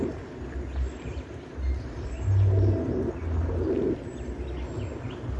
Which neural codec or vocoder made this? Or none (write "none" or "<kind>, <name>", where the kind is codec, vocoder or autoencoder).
none